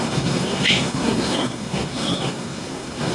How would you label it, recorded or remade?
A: remade